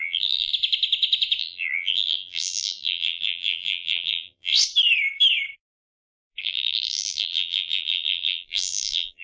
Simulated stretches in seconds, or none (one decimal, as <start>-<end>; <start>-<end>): 0.0-0.5; 1.4-4.5; 6.4-9.2